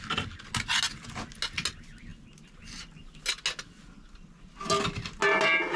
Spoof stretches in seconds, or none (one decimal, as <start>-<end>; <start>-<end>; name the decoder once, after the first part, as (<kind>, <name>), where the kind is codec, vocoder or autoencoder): none